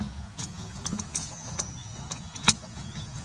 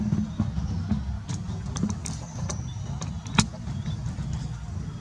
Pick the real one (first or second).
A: second